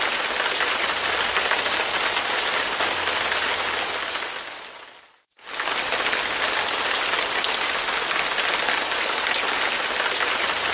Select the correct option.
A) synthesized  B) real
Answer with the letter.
B